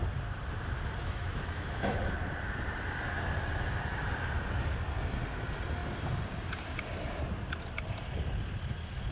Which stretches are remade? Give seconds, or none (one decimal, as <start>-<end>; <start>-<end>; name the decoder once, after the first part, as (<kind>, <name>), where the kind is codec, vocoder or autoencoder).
1.0-2.0 (autoencoder, DAC-VAE)